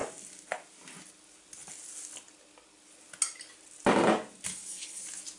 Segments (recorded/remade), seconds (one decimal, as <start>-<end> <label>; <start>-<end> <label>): 0.0-4.5 recorded; 4.5-5.0 remade; 5.0-5.4 recorded